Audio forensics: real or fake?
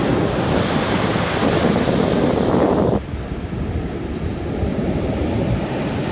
real